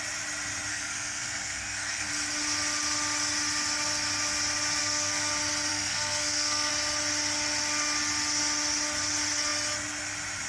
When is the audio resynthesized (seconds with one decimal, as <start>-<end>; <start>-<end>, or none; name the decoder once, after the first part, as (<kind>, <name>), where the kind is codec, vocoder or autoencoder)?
0.7-2.1 (codec, SNAC); 4.8-5.3; 5.7-6.7